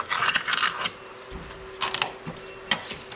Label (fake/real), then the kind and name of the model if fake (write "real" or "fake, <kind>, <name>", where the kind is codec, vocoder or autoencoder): real